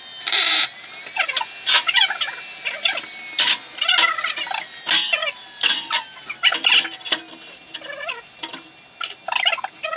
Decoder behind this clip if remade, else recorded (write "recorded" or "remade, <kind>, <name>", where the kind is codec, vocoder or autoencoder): recorded